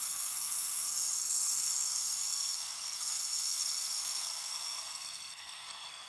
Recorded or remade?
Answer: remade